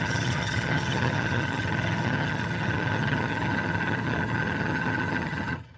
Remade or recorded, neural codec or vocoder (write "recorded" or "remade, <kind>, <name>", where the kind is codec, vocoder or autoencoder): remade, vocoder, HiFi-GAN